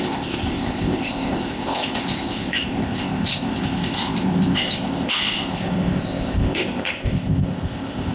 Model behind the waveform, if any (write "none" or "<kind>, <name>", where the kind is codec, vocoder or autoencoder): codec, ZipCodec